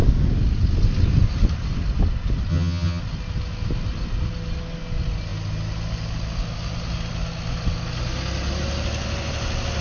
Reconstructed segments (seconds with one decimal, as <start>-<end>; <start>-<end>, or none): 2.5-3.0